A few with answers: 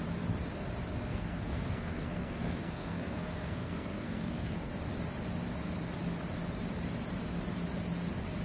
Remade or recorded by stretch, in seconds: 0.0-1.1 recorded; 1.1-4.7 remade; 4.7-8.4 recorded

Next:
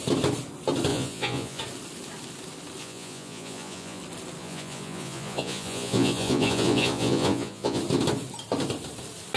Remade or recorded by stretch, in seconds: 0.0-0.9 recorded; 0.9-1.6 remade; 1.6-2.8 recorded; 2.8-4.0 remade; 4.0-4.4 recorded; 4.4-7.8 remade; 7.8-9.4 recorded

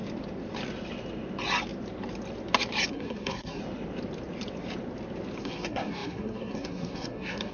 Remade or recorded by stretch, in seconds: 0.0-2.9 recorded; 2.9-3.6 remade; 3.6-5.4 recorded; 5.4-7.5 remade

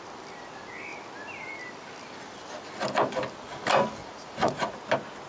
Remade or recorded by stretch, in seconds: 0.0-4.0 recorded; 4.0-4.7 remade; 4.7-5.3 recorded

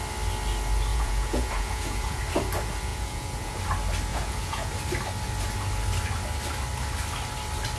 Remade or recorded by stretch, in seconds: 0.0-0.9 recorded; 0.9-2.2 remade; 2.2-2.9 recorded; 2.9-3.6 remade; 3.6-4.1 recorded; 4.1-4.7 remade; 4.7-7.8 recorded

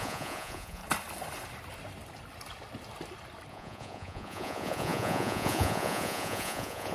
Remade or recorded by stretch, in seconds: 0.0-0.8 remade; 0.8-3.5 recorded; 3.5-6.9 remade

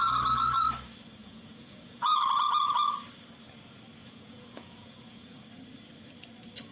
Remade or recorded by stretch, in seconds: 0.0-1.2 recorded; 1.2-2.2 remade; 2.2-4.0 recorded; 4.0-5.4 remade; 5.4-6.7 recorded